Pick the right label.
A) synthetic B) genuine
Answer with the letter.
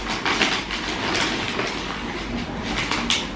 B